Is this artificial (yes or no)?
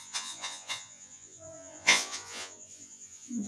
yes